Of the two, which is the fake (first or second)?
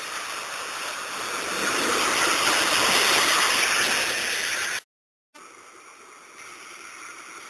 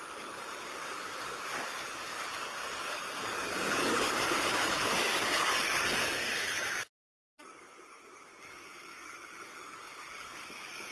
second